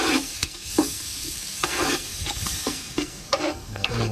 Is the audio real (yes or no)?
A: no